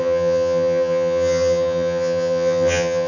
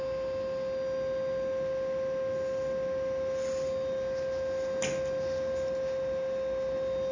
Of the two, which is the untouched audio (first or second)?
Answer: second